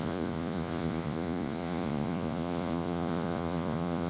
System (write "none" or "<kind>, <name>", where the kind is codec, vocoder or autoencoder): vocoder, Vocos